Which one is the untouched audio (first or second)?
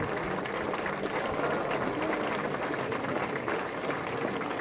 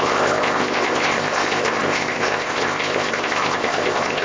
first